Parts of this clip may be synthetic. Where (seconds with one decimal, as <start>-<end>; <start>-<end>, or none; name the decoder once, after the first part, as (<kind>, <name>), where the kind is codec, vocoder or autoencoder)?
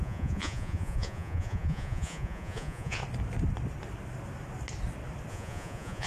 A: 0.0-3.0 (vocoder, Vocos); 5.3-6.1